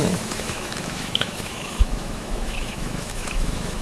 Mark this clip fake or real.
fake